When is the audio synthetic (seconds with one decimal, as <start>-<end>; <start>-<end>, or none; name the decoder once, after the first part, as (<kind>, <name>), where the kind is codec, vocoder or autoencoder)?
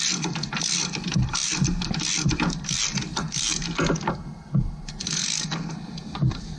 1.4-1.9 (vocoder, BigVGAN v2)